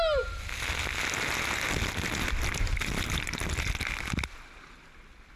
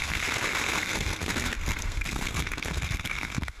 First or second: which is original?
first